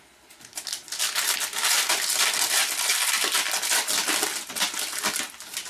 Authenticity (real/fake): real